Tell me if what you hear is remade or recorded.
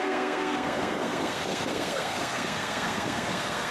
remade